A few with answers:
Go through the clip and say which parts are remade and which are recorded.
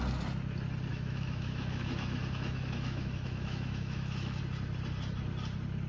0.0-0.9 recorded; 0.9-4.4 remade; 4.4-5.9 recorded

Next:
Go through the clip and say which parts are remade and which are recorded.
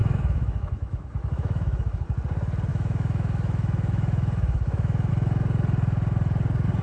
0.0-2.0 remade; 2.0-2.7 recorded; 2.7-5.1 remade; 5.1-6.8 recorded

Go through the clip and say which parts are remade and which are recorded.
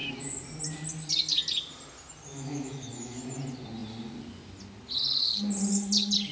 0.0-2.3 recorded; 2.3-3.2 remade; 3.2-6.3 recorded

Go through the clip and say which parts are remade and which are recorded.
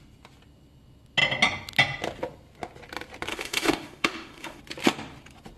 0.0-3.3 recorded; 3.3-4.6 remade; 4.6-5.6 recorded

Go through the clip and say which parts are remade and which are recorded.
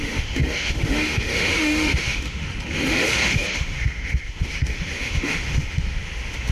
0.0-6.5 remade